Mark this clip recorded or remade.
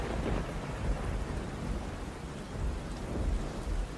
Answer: recorded